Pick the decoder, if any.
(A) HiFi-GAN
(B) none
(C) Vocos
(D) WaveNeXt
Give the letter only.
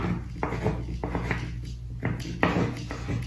B